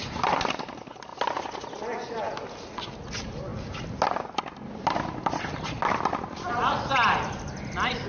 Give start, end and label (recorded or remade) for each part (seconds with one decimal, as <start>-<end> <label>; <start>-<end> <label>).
0.0-8.1 recorded